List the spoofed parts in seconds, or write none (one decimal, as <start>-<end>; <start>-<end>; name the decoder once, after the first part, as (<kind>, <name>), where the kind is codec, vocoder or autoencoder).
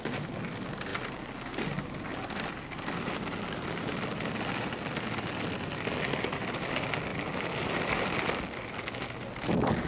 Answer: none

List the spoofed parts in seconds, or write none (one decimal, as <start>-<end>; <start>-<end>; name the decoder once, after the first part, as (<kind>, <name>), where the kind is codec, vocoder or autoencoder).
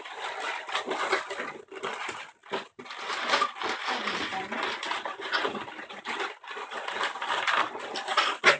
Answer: none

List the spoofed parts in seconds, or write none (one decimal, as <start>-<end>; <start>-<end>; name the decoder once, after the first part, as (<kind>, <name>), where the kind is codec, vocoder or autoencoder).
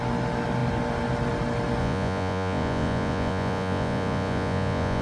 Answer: 1.8-5.0 (vocoder, Vocos)